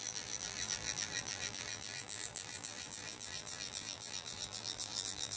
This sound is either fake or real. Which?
fake